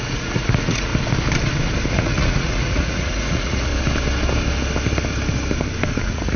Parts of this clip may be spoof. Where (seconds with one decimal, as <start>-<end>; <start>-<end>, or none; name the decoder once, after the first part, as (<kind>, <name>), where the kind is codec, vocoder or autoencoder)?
0.0-0.9 (vocoder, Vocos); 1.9-3.7; 5.9-6.4

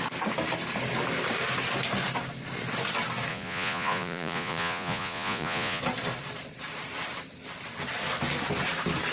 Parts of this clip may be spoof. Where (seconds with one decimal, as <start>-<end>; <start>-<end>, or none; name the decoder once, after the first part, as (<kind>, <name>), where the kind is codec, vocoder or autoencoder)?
3.3-5.8 (vocoder, Vocos)

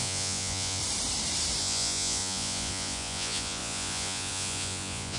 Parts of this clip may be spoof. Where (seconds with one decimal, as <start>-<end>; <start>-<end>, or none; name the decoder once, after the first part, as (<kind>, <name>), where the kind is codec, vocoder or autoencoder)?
0.0-0.8 (vocoder, Vocos); 1.6-5.2

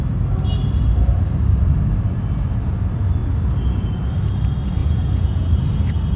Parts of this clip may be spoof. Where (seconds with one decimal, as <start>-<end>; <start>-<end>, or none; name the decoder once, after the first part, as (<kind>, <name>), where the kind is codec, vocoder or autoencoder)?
4.8-5.5 (vocoder, Vocos)

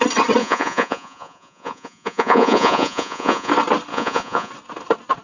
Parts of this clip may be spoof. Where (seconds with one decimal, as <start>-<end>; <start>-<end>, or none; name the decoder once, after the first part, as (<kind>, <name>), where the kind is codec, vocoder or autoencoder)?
0.4-3.5 (vocoder, Vocos); 3.9-4.5